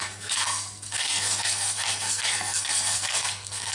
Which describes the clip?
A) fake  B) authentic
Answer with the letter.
A